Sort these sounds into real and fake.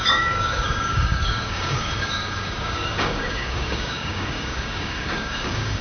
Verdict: fake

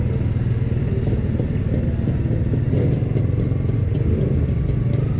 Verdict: real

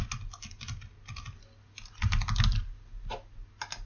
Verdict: real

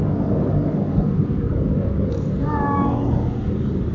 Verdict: fake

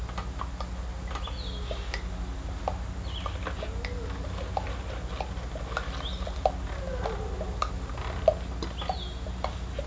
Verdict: real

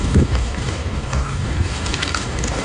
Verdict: fake